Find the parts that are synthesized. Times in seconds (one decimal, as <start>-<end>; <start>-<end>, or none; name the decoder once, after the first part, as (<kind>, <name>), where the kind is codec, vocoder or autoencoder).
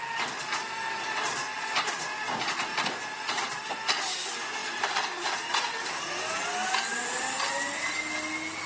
4.6-7.6 (vocoder, BigVGAN v2)